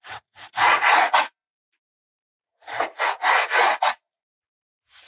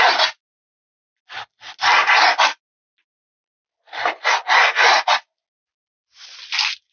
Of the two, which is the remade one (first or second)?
first